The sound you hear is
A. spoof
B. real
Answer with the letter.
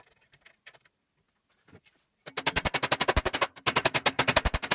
B